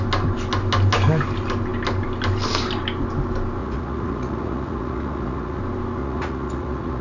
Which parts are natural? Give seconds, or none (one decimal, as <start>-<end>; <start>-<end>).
0.0-3.6; 5.6-6.0